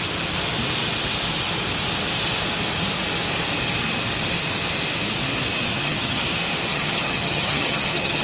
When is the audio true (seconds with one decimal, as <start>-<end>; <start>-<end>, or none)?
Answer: 0.0-5.7; 6.2-6.7